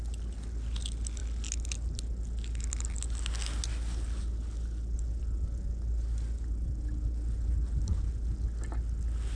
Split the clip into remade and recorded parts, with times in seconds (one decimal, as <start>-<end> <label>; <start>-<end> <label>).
0.0-9.4 recorded

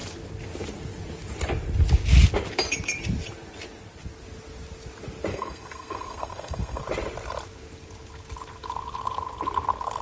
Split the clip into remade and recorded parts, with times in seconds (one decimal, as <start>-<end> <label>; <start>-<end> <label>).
0.0-5.3 recorded; 5.3-6.8 remade; 6.8-10.0 recorded

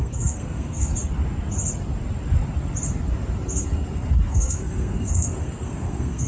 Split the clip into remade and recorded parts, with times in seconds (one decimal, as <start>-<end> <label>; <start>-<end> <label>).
0.0-0.9 remade; 0.9-4.3 recorded; 4.3-6.3 remade